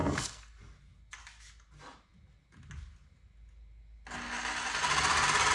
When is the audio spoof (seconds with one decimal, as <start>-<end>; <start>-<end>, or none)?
0.0-0.6